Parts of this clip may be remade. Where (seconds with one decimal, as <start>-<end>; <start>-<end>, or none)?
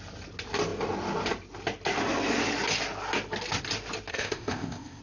4.1-5.0